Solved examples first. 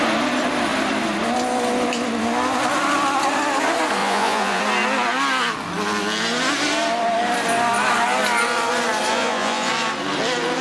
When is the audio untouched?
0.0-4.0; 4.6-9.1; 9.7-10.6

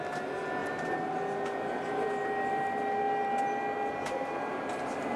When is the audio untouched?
0.0-5.2

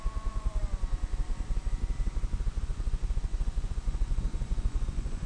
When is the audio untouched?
0.6-2.6

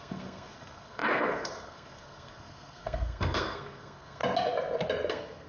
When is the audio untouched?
4.2-5.1

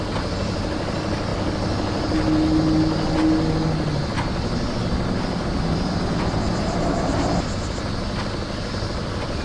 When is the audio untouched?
0.0-9.4

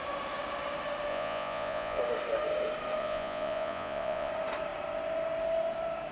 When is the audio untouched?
0.0-1.1; 2.0-3.0; 4.3-6.1